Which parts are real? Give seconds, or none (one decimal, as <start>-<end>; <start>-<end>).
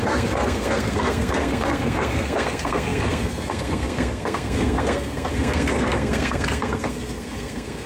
none